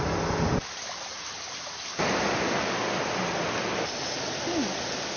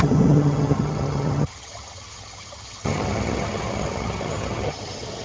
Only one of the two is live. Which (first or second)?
first